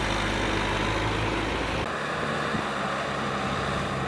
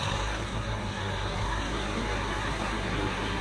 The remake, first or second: second